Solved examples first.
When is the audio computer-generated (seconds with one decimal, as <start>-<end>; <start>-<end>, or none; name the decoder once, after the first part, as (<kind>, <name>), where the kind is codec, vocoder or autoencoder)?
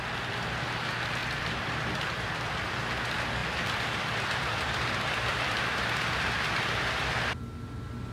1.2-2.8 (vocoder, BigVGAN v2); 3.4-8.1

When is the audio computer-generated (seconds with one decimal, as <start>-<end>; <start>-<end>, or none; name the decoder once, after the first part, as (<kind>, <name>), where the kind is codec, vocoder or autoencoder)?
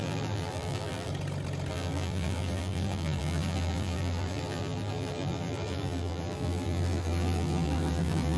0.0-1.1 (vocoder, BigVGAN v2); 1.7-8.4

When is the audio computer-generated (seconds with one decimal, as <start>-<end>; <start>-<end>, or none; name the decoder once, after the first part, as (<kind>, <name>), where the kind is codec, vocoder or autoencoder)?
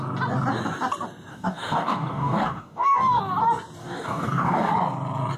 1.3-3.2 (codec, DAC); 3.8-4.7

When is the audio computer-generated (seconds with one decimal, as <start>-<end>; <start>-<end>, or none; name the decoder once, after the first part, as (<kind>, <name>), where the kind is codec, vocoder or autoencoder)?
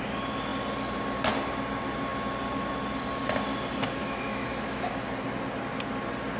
4.0-4.9 (autoencoder, DAC-VAE)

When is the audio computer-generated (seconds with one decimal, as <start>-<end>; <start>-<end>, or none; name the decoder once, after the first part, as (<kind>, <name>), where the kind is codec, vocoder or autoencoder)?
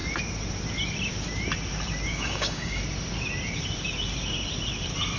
2.1-2.8 (codec, DAC)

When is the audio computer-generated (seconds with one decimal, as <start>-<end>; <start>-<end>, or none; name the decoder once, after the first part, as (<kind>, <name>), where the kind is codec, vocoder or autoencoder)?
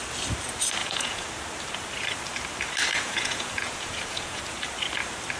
0.8-1.3 (vocoder, Vocos); 2.9-4.4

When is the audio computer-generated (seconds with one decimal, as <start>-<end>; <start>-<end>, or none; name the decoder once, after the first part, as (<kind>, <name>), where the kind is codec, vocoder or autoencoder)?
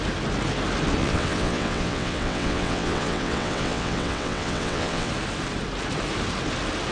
1.0-5.1 (vocoder, WaveNeXt)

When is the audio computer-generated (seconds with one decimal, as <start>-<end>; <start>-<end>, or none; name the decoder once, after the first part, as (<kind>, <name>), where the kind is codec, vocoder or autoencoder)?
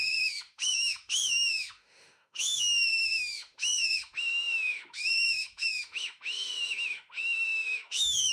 0.0-8.3 (autoencoder, DAC-VAE)